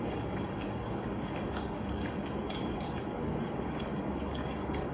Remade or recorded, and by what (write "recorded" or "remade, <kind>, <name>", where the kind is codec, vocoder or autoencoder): remade, codec, DAC